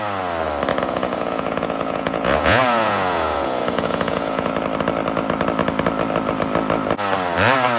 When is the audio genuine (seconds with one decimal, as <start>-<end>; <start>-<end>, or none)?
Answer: 0.0-0.7; 4.5-7.8